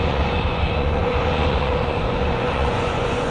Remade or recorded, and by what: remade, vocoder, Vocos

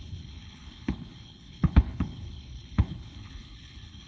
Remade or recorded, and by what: remade, codec, HILCodec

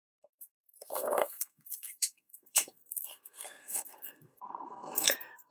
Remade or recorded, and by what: remade, codec, SNAC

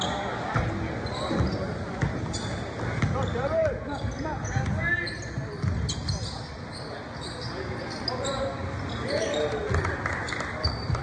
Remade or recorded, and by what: recorded